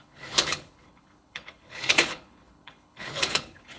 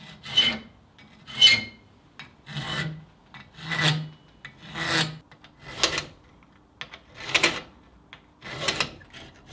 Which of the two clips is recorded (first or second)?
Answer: second